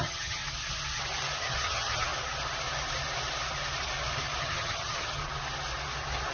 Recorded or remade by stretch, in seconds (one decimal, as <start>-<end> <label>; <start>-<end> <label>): 0.0-0.4 remade; 0.4-1.4 recorded; 1.4-2.1 remade; 2.1-4.4 recorded; 4.4-5.2 remade; 5.2-6.3 recorded